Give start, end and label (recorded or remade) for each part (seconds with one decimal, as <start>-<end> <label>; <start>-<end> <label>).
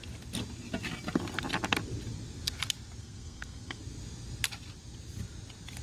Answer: 0.0-3.0 recorded; 3.0-3.8 remade; 3.8-5.8 recorded